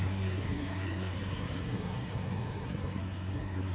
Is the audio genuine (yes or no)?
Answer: no